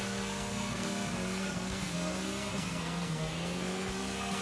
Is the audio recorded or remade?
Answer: remade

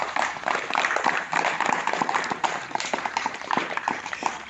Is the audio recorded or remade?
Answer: remade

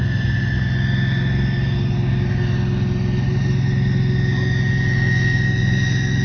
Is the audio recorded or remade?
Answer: recorded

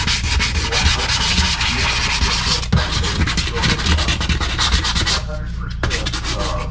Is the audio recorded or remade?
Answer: recorded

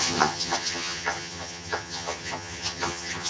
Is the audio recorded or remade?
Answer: remade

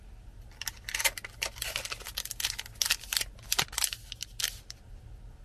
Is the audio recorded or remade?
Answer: recorded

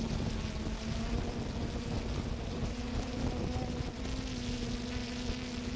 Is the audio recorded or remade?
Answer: recorded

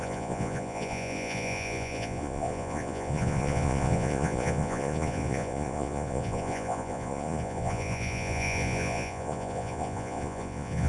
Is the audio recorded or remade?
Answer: remade